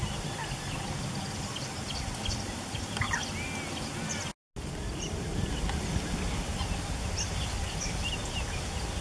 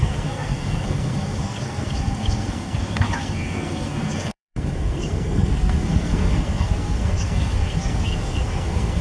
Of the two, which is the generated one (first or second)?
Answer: second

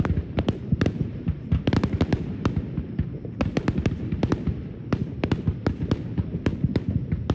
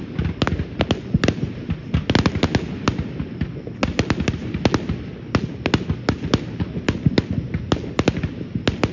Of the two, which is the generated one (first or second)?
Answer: first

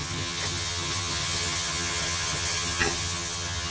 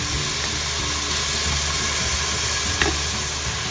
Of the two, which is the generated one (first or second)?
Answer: first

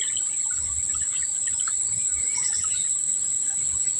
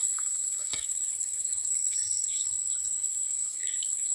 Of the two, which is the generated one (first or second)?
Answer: second